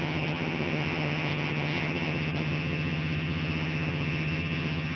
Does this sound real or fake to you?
fake